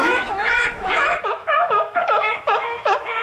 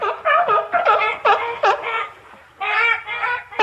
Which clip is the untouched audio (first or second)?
second